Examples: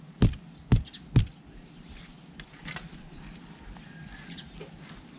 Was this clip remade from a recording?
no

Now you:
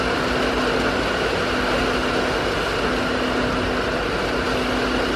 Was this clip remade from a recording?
no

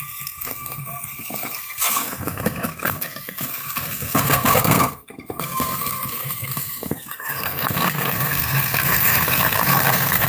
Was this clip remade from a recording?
yes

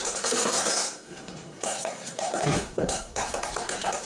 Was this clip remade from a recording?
yes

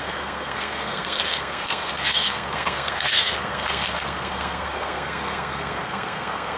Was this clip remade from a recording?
yes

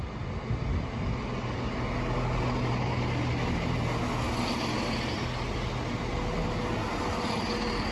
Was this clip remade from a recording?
no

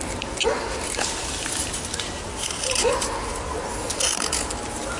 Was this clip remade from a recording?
no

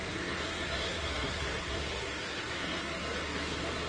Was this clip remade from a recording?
yes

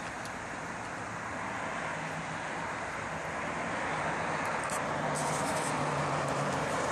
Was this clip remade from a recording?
no